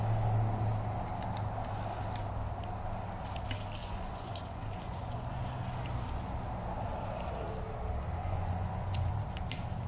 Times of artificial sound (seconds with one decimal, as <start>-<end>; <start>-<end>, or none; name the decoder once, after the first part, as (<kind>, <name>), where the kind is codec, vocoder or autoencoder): 3.8-5.4 (vocoder, Vocos); 8.2-9.1